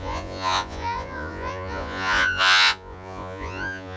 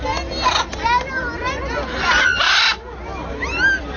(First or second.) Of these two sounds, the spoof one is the first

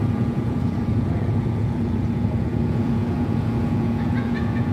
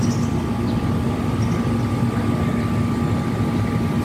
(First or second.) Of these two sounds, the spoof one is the first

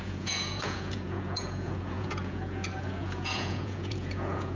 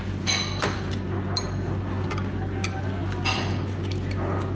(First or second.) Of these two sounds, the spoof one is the first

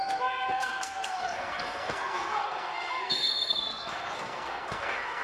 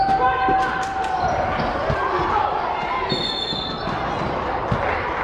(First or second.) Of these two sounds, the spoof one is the first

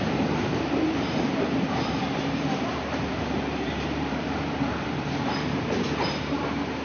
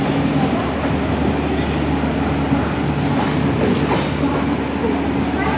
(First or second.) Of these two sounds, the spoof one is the first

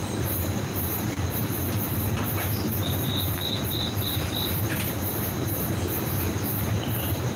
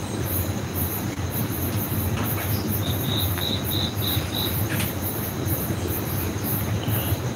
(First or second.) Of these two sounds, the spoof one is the first